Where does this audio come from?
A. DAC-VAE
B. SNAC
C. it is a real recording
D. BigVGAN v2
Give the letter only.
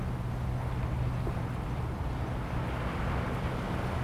C